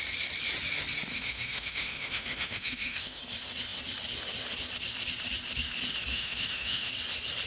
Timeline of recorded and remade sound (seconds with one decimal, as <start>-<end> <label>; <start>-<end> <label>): 0.0-1.1 recorded; 1.1-3.2 remade; 3.2-6.1 recorded; 6.1-6.9 remade; 6.9-7.5 recorded